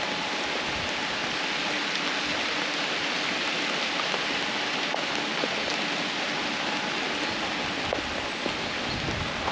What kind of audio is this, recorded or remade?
recorded